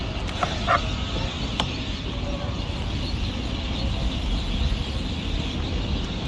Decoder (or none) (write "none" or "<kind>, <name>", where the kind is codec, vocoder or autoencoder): none